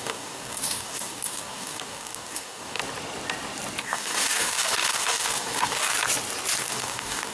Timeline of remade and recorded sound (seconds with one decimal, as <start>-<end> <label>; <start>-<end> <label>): 0.0-2.8 remade; 2.8-3.8 recorded; 3.8-5.9 remade; 5.9-6.6 recorded; 6.6-7.3 remade